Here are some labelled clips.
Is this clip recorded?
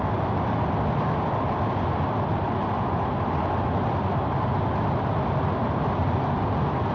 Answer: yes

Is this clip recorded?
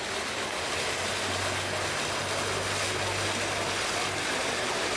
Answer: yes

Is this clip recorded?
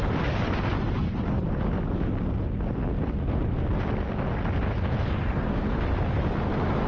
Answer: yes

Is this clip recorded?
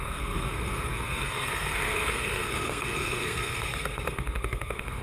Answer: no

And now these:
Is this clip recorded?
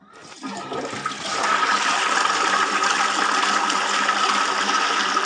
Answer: no